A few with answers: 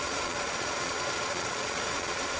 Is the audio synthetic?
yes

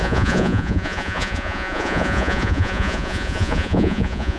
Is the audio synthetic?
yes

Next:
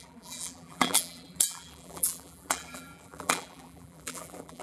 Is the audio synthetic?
yes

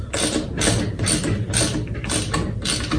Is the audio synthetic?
no